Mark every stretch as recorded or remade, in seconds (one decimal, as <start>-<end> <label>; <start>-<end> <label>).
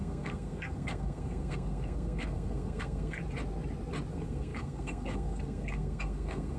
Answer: 0.0-3.2 remade; 3.2-4.1 recorded; 4.1-6.6 remade